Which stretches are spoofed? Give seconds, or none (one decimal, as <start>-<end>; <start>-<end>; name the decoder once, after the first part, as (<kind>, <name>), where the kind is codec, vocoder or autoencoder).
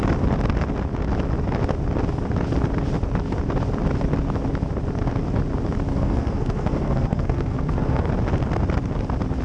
5.9-8.1 (codec, SNAC)